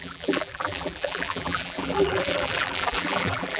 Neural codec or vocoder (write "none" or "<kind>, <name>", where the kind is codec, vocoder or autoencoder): vocoder, BigVGAN v2